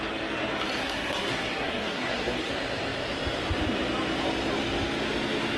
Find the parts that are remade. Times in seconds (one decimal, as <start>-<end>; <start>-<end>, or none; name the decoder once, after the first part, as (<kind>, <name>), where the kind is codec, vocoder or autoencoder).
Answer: 0.8-2.5 (codec, SNAC)